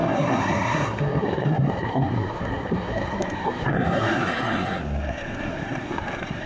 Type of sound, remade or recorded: remade